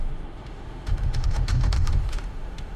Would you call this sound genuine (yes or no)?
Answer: no